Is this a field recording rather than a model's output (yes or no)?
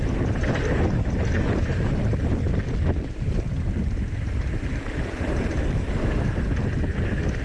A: yes